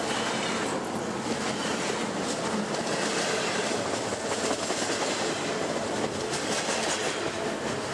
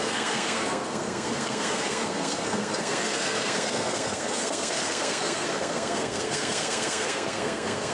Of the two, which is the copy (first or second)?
second